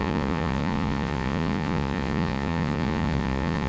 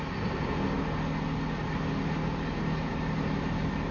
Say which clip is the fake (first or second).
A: first